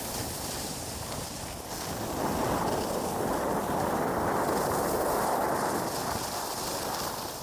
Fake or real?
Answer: real